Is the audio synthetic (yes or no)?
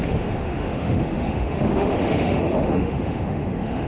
yes